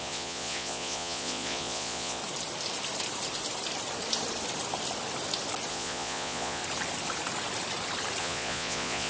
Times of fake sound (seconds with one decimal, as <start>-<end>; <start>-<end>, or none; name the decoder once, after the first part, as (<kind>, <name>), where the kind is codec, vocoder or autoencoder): 0.0-2.2 (vocoder, Vocos); 5.7-6.6; 8.2-9.1